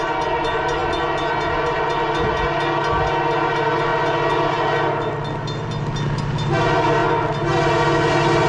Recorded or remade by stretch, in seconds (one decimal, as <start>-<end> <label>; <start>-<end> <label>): 0.0-8.5 recorded

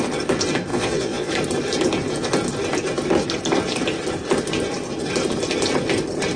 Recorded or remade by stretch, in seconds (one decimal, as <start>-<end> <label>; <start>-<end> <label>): 0.0-0.7 recorded; 0.7-1.3 remade; 1.3-6.4 recorded

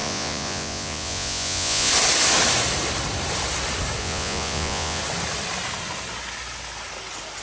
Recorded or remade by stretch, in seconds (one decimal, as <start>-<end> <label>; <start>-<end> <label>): 0.0-1.9 remade; 1.9-4.0 recorded; 4.0-5.0 remade; 5.0-7.4 recorded

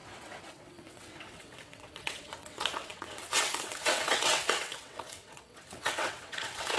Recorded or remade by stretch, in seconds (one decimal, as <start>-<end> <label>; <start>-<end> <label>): 0.0-6.8 remade

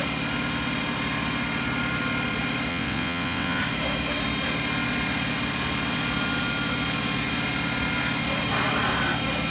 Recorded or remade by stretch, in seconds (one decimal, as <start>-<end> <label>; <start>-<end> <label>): 0.0-2.7 recorded; 2.7-3.6 remade; 3.6-9.5 recorded